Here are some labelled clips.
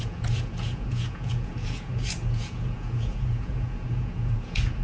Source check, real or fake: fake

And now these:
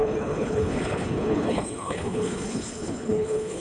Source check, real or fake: fake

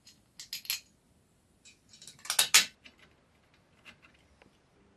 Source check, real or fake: real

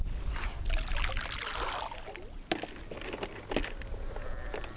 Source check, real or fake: real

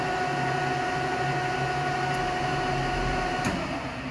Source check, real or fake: real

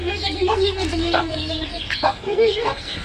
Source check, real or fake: fake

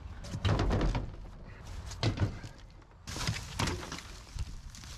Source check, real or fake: real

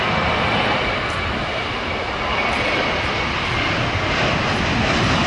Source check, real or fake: fake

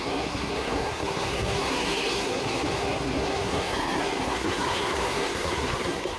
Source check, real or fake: fake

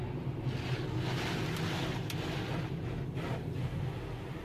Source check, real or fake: real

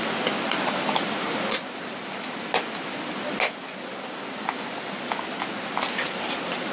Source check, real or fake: real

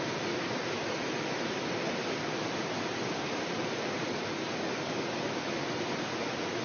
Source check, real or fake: real